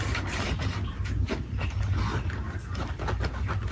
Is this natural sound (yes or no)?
yes